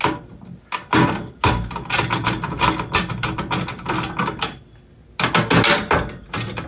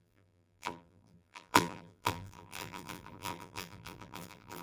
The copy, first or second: second